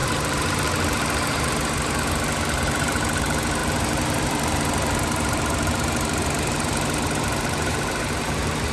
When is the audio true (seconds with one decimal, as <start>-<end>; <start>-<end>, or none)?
none